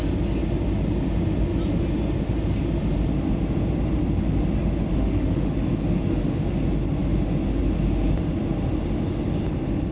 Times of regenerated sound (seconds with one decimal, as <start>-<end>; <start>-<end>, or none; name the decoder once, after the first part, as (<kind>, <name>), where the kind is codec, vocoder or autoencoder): 4.9-5.5 (autoencoder, DAC-VAE)